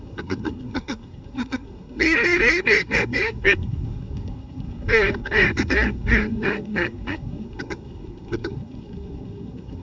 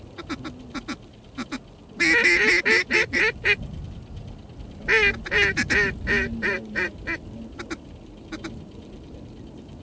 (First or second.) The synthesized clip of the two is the first